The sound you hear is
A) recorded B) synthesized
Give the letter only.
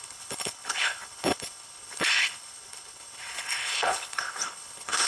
B